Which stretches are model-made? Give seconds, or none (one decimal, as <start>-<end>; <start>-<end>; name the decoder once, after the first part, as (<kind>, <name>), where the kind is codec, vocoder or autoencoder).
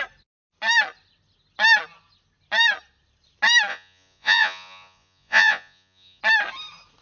3.7-6.2 (vocoder, Vocos)